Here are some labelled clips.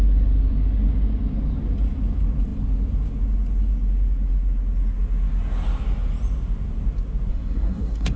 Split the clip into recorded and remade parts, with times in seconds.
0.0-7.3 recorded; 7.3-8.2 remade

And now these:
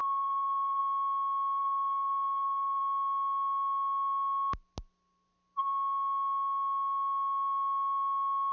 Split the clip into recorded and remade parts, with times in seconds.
0.0-0.8 remade; 0.8-1.6 recorded; 1.6-2.8 remade; 2.8-8.5 recorded

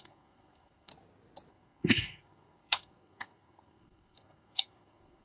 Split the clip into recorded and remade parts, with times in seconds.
0.0-0.9 remade; 0.9-1.5 recorded; 1.5-5.2 remade

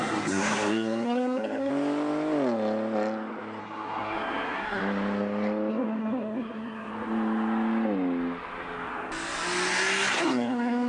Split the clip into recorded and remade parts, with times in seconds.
0.0-1.7 remade; 1.7-3.6 recorded; 3.6-4.8 remade; 4.8-5.7 recorded; 5.7-6.9 remade; 6.9-10.2 recorded; 10.2-10.9 remade

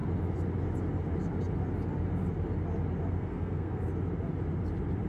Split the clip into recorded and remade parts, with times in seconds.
0.0-3.1 recorded; 3.1-3.9 remade; 3.9-5.1 recorded

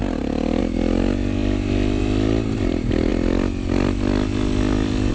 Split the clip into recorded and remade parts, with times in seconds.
0.0-5.1 recorded

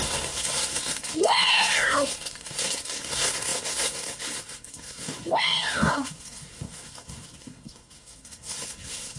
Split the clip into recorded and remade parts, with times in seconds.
0.0-9.2 remade